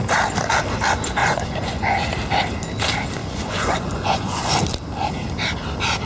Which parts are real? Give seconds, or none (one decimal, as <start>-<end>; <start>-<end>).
0.0-1.2; 2.0-3.2; 4.6-6.1